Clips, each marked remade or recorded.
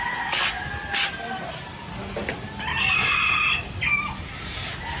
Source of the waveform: recorded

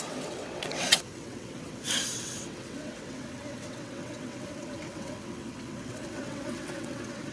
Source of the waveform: remade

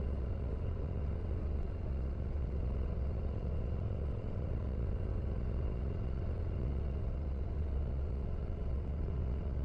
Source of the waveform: remade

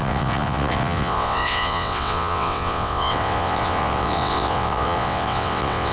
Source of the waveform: remade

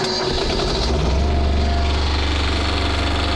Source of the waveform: recorded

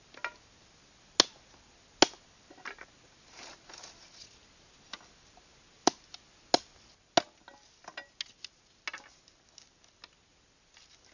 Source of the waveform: recorded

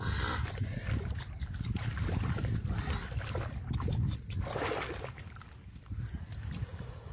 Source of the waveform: recorded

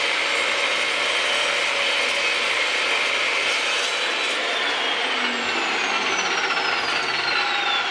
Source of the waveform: recorded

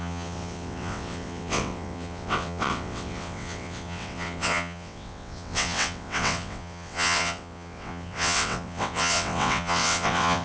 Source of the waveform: remade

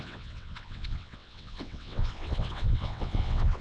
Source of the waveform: remade